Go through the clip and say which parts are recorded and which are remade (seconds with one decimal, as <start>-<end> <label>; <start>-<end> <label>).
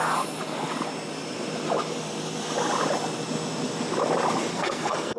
0.0-4.5 recorded; 4.5-5.2 remade